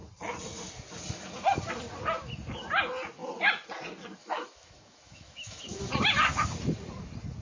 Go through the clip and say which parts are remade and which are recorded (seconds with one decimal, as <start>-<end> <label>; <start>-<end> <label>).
0.0-4.2 recorded; 4.2-5.8 remade; 5.8-7.4 recorded